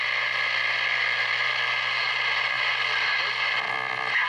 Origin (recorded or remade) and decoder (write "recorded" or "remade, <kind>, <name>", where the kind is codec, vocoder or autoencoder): recorded